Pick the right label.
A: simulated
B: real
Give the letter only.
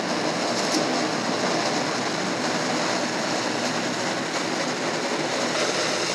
B